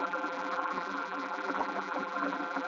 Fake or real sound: fake